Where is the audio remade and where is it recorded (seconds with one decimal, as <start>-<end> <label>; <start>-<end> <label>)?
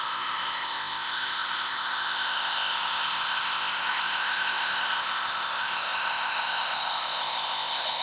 0.0-8.0 remade